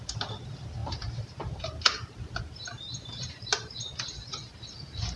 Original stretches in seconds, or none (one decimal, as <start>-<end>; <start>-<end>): 0.0-0.8; 3.9-5.2